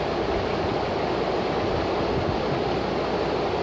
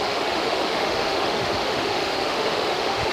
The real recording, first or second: first